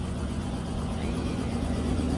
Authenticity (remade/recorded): remade